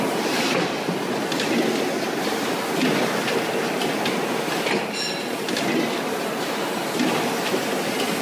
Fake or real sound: real